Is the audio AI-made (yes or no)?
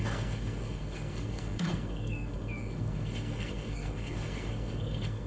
yes